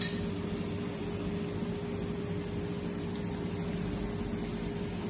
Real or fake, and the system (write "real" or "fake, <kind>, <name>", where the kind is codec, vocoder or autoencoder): real